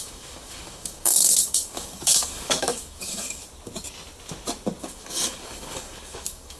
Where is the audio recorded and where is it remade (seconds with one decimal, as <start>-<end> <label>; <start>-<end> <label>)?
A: 0.0-3.4 remade; 3.4-4.8 recorded; 4.8-6.6 remade